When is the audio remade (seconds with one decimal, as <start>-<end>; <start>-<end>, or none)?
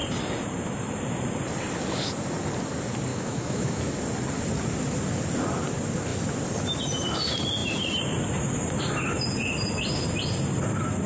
3.1-3.8